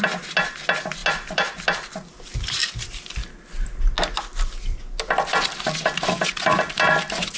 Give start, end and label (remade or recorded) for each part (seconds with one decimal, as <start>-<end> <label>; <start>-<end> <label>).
0.0-7.4 recorded